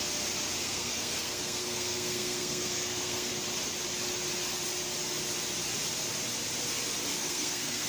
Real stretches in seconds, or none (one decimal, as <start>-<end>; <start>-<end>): 0.0-0.6; 3.3-7.1